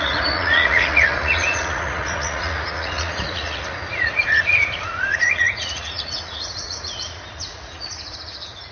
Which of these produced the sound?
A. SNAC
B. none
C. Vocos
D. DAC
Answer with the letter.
C